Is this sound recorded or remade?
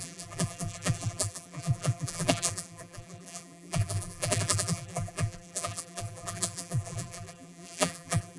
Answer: remade